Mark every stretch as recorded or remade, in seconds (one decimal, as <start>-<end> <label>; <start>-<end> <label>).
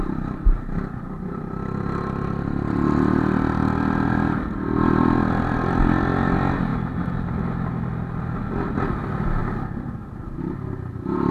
0.0-11.3 recorded